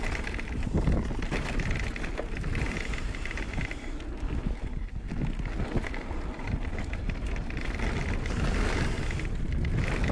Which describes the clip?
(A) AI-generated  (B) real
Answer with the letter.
B